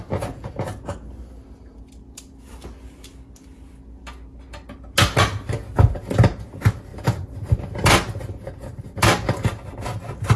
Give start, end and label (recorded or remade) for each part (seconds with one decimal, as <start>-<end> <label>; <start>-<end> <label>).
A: 0.0-10.4 recorded